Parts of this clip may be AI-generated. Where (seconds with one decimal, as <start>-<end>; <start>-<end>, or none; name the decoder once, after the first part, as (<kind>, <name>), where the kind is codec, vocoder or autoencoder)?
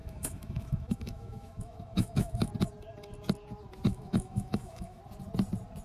0.0-2.5 (autoencoder, DAC-VAE); 3.9-5.0